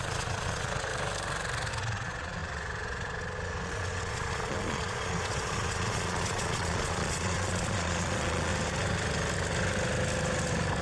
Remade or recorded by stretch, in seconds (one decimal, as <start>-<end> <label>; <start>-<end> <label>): 0.0-0.9 remade; 0.9-1.8 recorded; 1.8-8.5 remade; 8.5-10.8 recorded